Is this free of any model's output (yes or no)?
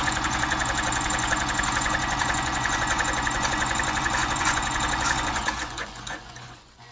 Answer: no